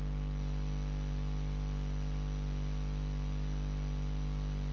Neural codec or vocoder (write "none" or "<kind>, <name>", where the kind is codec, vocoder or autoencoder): none